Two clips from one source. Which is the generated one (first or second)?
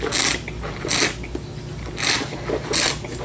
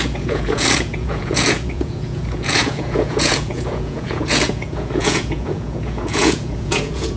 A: second